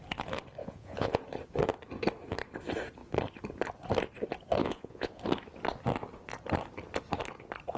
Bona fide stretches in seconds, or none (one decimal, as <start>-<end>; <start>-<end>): 0.0-0.6; 1.2-4.6; 5.2-7.8